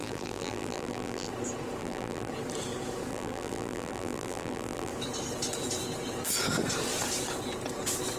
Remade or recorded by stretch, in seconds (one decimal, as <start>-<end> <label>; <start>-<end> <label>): 0.0-1.3 remade; 1.3-1.8 recorded; 1.8-2.3 remade; 2.3-3.1 recorded; 3.1-4.9 remade; 4.9-8.2 recorded